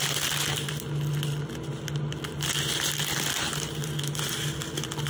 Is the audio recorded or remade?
recorded